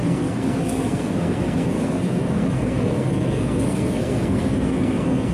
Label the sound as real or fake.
fake